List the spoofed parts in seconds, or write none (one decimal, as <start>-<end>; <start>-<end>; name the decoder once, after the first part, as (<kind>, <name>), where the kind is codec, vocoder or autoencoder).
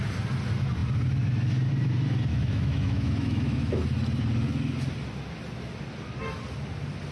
2.3-3.8 (autoencoder, DAC-VAE)